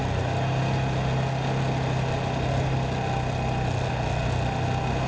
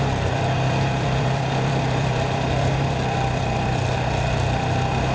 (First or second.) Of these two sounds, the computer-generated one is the second